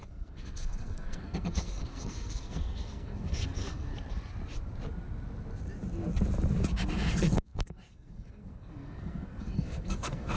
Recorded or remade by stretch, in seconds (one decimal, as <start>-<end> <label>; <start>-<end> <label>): 0.0-3.9 remade; 3.9-7.1 recorded; 7.1-10.4 remade